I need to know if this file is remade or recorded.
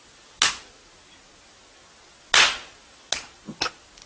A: recorded